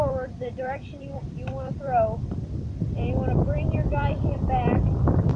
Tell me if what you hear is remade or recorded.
remade